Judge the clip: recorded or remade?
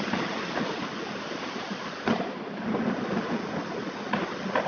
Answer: recorded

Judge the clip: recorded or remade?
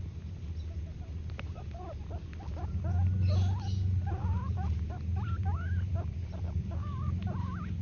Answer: recorded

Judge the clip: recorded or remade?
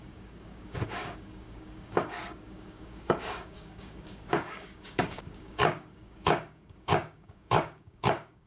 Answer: remade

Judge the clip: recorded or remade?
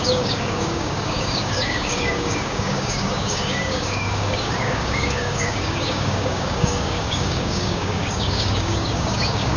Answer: remade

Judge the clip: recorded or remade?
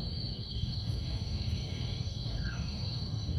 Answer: remade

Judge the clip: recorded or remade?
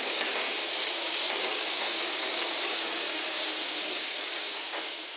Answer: remade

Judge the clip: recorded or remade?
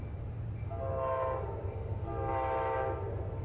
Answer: recorded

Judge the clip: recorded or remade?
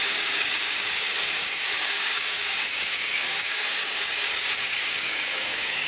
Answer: remade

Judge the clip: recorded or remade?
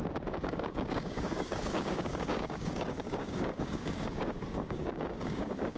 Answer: remade